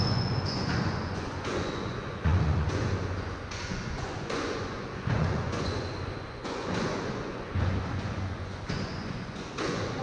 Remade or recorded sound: remade